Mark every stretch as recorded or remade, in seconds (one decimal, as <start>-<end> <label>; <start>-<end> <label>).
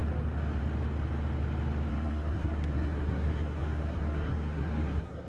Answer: 0.0-1.9 recorded; 1.9-5.3 remade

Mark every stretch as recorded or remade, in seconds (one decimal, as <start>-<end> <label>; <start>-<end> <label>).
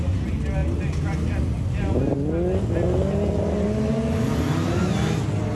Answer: 0.0-5.5 recorded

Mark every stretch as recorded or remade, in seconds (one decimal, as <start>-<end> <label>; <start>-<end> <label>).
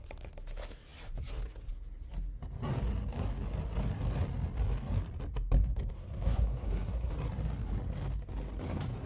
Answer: 0.0-5.6 recorded; 5.6-7.1 remade; 7.1-9.1 recorded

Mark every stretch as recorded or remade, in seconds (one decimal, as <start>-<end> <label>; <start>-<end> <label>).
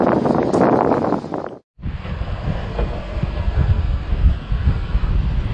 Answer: 0.0-1.8 recorded; 1.8-5.1 remade; 5.1-5.5 recorded